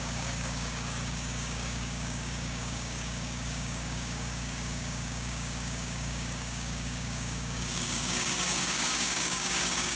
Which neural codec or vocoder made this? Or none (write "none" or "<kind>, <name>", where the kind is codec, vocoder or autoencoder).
codec, DAC